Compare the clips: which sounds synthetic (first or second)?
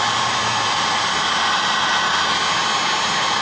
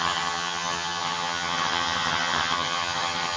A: second